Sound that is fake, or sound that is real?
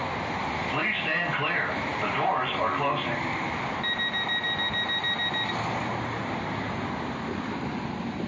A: real